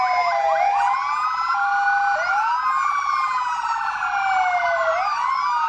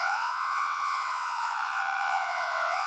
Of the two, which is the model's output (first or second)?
second